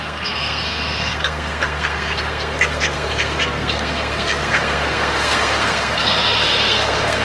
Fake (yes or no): yes